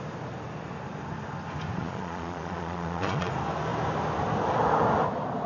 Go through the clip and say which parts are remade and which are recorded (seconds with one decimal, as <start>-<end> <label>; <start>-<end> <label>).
0.0-1.8 recorded; 1.8-3.3 remade; 3.3-5.5 recorded